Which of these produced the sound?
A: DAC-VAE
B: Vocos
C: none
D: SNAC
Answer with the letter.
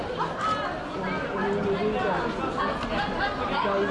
C